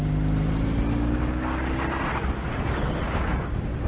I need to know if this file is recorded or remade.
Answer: recorded